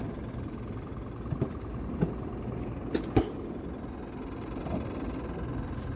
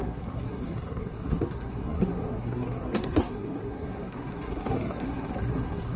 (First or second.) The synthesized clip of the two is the second